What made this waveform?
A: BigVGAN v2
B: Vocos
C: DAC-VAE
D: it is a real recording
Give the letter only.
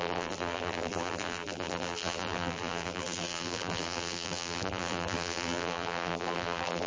A